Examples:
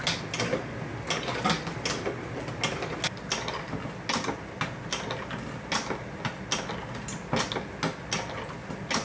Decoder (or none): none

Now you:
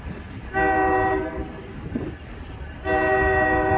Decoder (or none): vocoder, BigVGAN v2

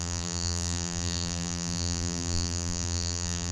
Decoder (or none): vocoder, BigVGAN v2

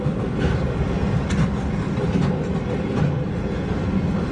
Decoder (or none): none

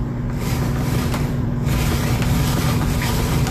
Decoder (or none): vocoder, BigVGAN v2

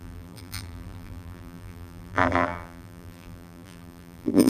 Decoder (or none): vocoder, BigVGAN v2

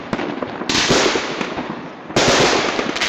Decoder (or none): none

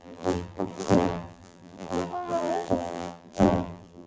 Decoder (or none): vocoder, BigVGAN v2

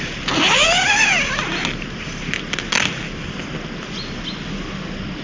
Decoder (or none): none